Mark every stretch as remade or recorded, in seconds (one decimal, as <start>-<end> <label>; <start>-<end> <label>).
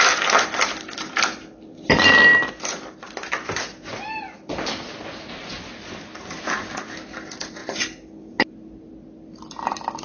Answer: 0.0-10.0 recorded